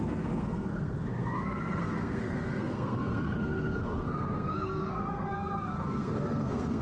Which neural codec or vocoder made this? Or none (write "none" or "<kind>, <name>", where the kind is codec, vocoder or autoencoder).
codec, SNAC